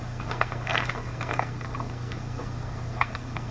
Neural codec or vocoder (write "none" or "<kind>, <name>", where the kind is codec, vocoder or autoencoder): codec, SNAC